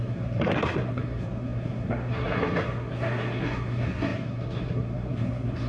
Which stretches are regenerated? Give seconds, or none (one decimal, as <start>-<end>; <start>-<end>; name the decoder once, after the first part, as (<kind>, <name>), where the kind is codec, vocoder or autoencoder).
0.0-5.7 (codec, SNAC)